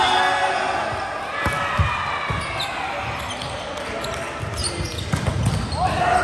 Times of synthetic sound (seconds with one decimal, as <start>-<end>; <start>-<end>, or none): none